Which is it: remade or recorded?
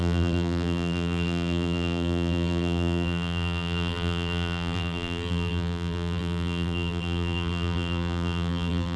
remade